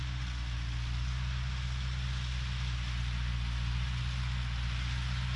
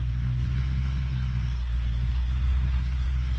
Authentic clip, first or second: first